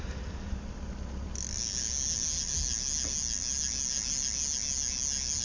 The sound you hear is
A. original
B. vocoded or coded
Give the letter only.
A